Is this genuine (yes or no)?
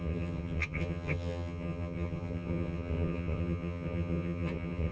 no